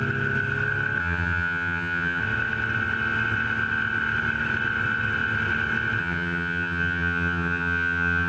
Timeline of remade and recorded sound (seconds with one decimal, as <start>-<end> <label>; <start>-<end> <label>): 0.0-1.0 recorded; 1.0-2.2 remade; 2.2-6.0 recorded; 6.0-8.3 remade